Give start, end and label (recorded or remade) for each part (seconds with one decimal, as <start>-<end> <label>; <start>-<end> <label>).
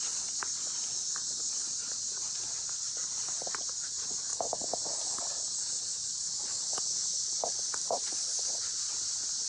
0.0-7.8 recorded; 7.8-8.7 remade; 8.7-9.5 recorded